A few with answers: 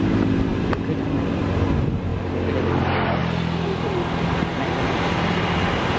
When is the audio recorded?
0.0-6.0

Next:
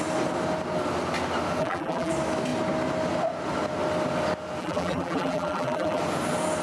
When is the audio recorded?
0.0-1.6; 2.1-4.6; 6.0-6.6

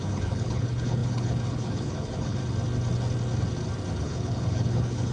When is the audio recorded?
2.4-4.0

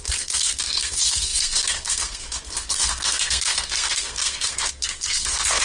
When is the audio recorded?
none